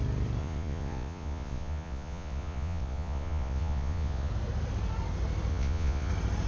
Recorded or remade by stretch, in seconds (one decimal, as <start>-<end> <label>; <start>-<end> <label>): 0.0-0.4 recorded; 0.4-4.3 remade; 4.3-5.5 recorded; 5.5-6.1 remade; 6.1-6.5 recorded